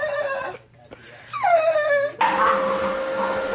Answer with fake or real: real